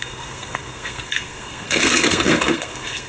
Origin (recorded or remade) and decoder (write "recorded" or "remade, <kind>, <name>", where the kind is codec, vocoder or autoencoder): remade, codec, SNAC